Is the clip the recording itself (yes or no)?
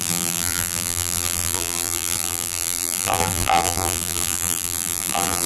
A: no